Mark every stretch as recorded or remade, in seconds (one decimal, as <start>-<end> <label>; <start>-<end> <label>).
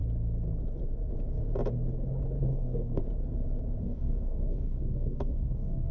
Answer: 0.0-2.4 recorded; 2.4-3.0 remade; 3.0-3.8 recorded; 3.8-5.9 remade